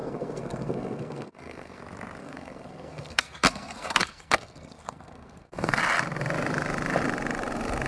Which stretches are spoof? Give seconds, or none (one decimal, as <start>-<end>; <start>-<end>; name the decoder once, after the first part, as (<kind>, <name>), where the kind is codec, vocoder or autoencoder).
0.0-1.8 (codec, SNAC); 2.2-5.8